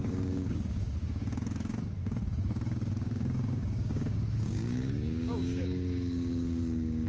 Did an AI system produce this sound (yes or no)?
yes